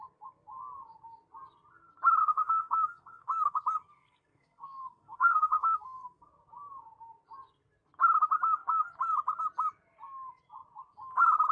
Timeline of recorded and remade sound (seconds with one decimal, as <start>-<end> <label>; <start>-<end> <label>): 0.0-2.2 recorded; 2.2-6.3 remade; 6.3-11.5 recorded